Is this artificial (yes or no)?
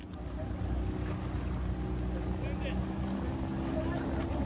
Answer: no